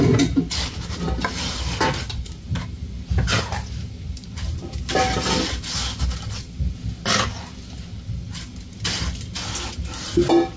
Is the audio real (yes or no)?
yes